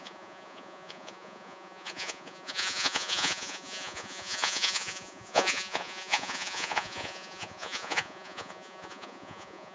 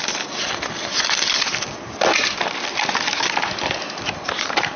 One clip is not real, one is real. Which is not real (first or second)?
first